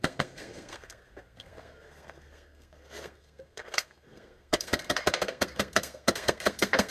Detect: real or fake fake